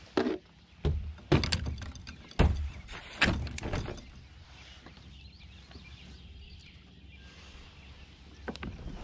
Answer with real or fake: real